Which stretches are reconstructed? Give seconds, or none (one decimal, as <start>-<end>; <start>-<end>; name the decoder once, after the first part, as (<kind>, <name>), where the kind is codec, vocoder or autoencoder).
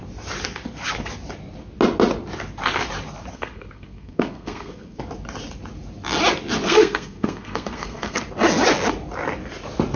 3.3-5.0 (codec, SNAC); 6.6-8.2